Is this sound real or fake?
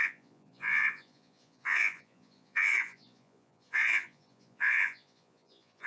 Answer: fake